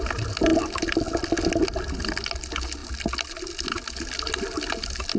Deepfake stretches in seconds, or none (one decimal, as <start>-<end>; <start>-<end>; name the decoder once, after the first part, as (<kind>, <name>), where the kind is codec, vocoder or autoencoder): none